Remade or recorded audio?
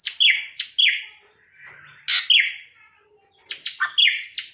recorded